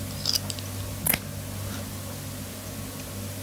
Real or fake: real